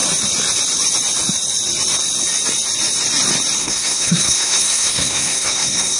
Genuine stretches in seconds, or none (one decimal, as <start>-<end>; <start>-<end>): 0.0-3.6